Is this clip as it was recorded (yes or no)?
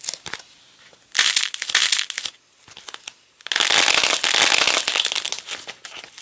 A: yes